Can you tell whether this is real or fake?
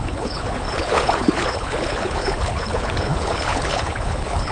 fake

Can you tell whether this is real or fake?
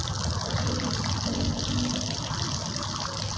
real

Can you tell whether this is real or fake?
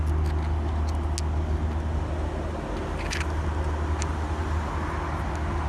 real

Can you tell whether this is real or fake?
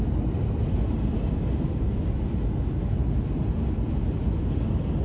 real